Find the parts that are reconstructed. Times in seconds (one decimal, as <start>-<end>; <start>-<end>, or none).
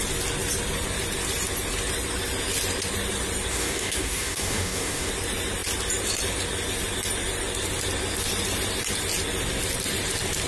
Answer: 3.5-5.1